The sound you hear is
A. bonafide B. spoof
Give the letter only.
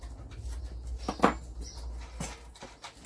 A